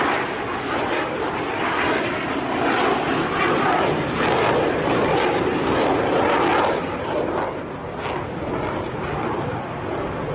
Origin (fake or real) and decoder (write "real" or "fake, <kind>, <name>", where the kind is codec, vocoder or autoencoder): real